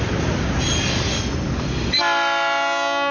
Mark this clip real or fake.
real